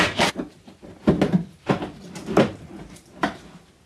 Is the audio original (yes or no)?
yes